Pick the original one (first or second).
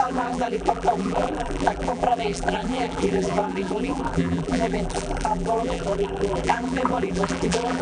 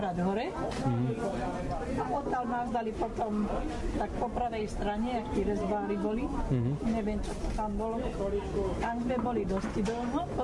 second